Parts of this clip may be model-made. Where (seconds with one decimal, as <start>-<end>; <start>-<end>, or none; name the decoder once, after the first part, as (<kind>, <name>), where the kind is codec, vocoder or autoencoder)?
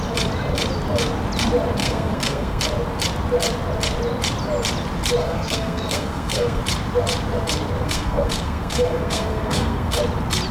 1.8-2.6 (codec, SNAC); 5.2-6.6; 7.8-10.0